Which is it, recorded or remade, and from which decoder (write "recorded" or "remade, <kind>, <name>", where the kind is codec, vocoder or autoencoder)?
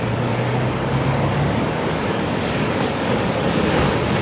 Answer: remade, codec, DAC